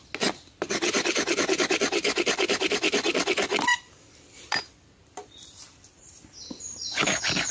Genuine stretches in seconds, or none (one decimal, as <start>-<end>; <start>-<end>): 0.0-3.7; 6.1-7.5